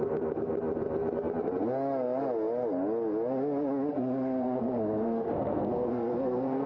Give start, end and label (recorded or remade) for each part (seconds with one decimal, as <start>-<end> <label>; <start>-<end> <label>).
0.0-0.5 remade; 0.5-3.9 recorded; 3.9-6.7 remade